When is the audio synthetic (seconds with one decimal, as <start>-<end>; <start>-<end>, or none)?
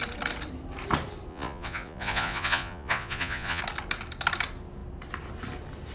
1.3-3.6